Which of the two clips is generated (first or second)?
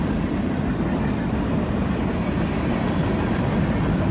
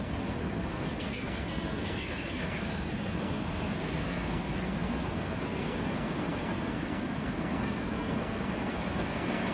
second